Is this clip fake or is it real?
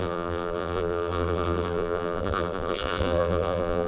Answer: fake